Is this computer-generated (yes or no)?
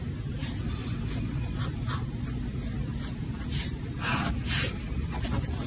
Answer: yes